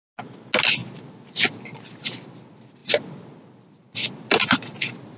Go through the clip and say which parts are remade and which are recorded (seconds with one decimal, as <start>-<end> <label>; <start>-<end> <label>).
0.0-5.2 recorded